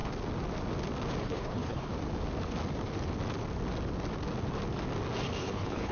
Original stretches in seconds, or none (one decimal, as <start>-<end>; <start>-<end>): 0.0-1.2; 1.9-5.4